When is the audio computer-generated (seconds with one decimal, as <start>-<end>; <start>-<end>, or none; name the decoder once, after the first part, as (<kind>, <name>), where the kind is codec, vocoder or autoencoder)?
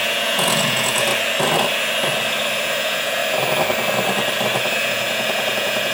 0.0-1.1 (vocoder, Vocos); 2.6-3.2; 4.7-5.9